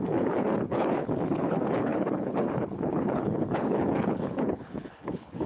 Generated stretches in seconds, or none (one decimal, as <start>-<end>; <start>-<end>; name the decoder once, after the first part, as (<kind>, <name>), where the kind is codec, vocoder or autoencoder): 0.0-5.5 (codec, HILCodec)